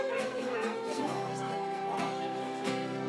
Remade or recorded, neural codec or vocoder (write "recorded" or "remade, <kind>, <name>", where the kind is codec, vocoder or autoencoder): remade, codec, SNAC